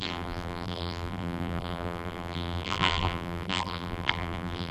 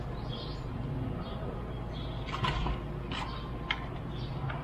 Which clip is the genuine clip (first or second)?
second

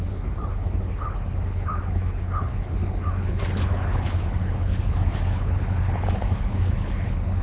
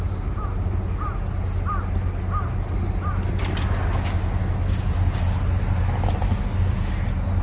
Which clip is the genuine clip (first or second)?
second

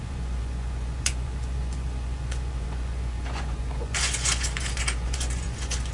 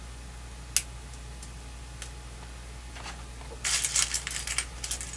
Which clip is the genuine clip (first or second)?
second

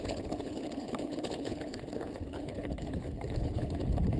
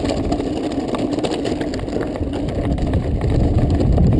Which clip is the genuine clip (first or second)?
second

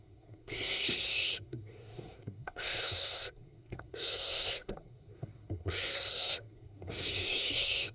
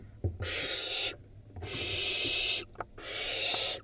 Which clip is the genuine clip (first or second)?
second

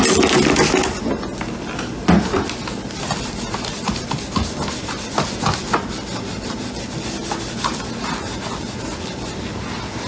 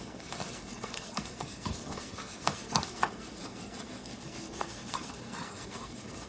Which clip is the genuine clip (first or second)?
first